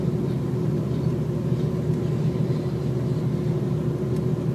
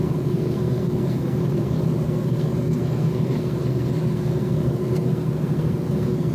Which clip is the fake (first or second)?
second